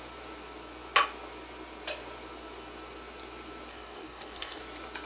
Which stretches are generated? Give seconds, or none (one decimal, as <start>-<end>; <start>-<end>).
3.7-4.6